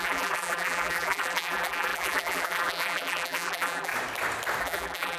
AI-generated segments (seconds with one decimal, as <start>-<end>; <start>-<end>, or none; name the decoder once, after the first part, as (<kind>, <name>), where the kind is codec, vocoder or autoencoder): 0.0-3.9 (vocoder, BigVGAN v2); 4.6-5.2